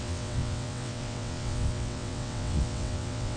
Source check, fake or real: fake